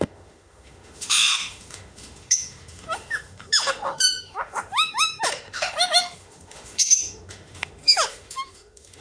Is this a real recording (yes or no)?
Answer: no